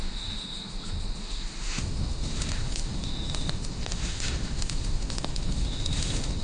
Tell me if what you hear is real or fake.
fake